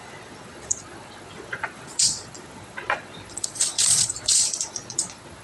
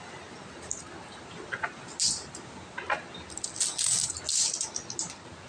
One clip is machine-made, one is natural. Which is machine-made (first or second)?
first